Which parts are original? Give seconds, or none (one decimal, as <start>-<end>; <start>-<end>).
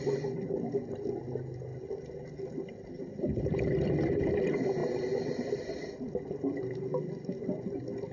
0.0-8.1